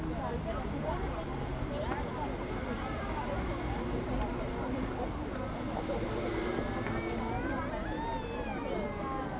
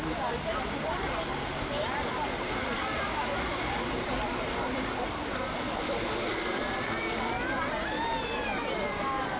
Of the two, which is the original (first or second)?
first